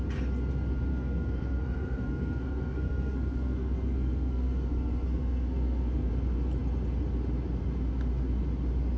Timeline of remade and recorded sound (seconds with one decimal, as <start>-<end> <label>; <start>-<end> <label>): 0.0-0.9 recorded; 0.9-6.1 remade; 6.1-9.0 recorded